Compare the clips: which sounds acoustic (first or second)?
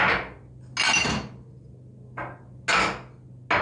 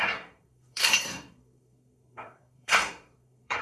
first